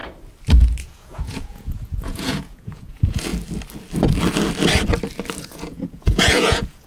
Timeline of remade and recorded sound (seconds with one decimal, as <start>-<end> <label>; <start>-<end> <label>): 0.0-0.8 recorded; 0.8-3.3 remade; 3.3-5.4 recorded; 5.4-6.9 remade